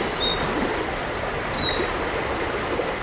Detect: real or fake real